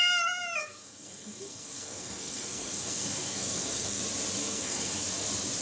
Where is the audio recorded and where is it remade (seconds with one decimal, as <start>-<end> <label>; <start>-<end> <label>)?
0.0-0.6 recorded; 0.6-4.0 remade; 4.0-4.4 recorded; 4.4-4.9 remade; 4.9-5.6 recorded